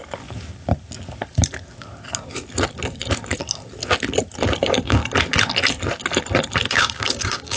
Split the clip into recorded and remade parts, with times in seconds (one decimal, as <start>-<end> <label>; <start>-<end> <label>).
0.0-4.6 recorded; 4.6-5.0 remade; 5.0-6.7 recorded; 6.7-7.6 remade

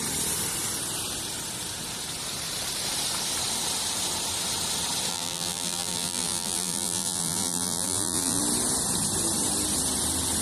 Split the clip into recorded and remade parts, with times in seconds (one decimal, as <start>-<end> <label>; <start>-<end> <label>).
0.0-5.1 recorded; 5.1-8.4 remade; 8.4-10.4 recorded

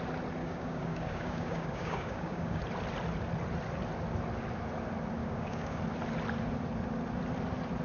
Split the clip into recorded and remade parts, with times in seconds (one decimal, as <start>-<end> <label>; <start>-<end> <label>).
0.0-0.4 recorded; 0.4-2.6 remade; 2.6-5.2 recorded; 5.2-5.8 remade; 5.8-7.8 recorded

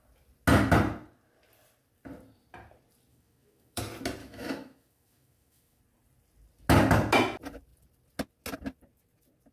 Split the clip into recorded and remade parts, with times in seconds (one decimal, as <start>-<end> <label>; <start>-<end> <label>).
0.0-3.1 recorded; 3.1-3.8 remade; 3.8-4.2 recorded; 4.2-5.8 remade; 5.8-9.5 recorded

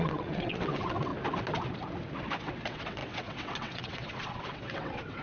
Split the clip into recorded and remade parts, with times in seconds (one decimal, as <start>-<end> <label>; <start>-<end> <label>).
0.0-1.1 remade; 1.1-2.4 recorded; 2.4-5.2 remade

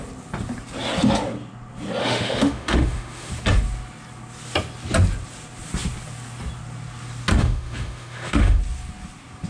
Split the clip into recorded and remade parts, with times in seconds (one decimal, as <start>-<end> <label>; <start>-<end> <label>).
0.0-2.0 recorded; 2.0-3.3 remade; 3.3-7.4 recorded; 7.4-8.6 remade; 8.6-9.5 recorded

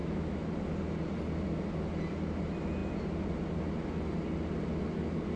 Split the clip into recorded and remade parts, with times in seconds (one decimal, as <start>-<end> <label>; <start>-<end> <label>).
0.0-0.5 remade; 0.5-5.4 recorded